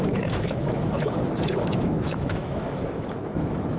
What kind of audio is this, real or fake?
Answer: fake